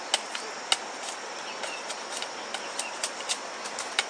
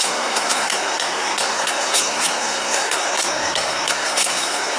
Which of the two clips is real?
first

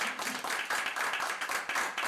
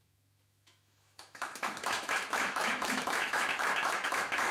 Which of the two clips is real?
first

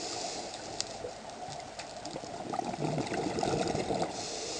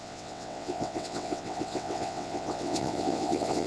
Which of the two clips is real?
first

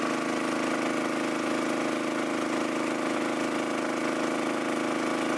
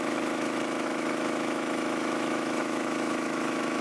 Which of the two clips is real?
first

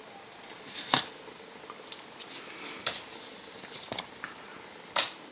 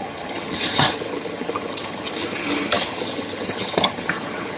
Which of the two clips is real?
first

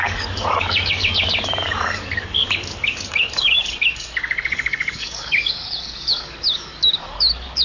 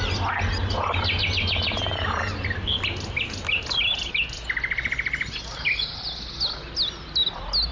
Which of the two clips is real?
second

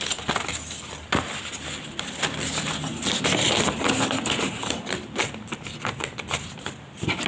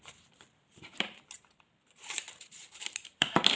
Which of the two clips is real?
first